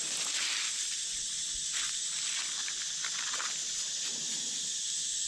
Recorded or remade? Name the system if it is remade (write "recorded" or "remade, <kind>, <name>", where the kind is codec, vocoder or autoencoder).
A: recorded